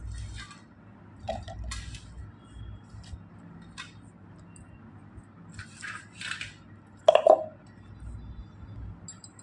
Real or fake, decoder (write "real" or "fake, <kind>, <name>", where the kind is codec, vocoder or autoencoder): real